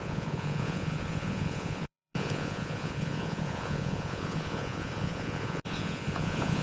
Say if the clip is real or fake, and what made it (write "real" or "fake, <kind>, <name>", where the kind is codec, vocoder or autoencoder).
fake, vocoder, Vocos